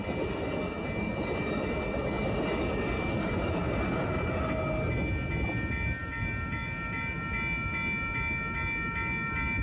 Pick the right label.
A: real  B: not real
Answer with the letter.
A